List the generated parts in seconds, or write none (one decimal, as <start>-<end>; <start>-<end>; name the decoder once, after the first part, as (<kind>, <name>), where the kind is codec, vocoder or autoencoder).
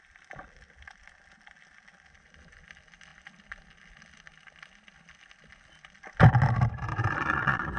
6.9-7.8 (vocoder, Vocos)